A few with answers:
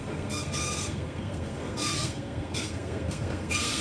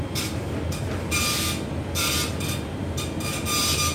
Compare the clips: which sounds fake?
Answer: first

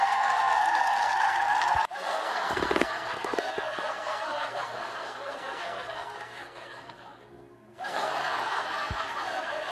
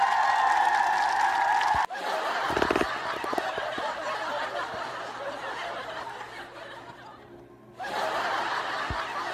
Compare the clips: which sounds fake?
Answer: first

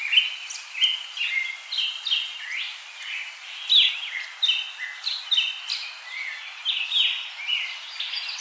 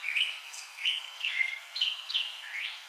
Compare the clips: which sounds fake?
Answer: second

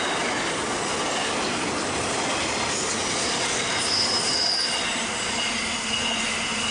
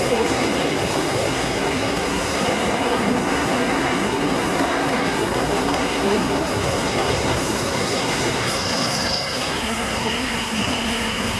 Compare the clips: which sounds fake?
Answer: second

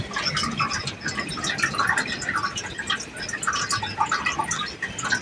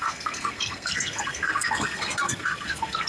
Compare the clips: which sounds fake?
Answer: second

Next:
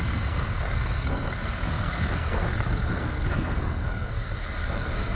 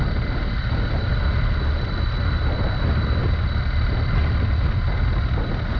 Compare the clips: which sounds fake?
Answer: first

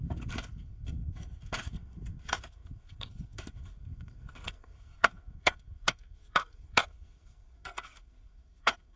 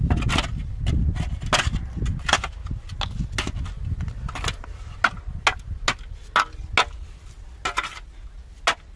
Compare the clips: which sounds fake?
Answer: first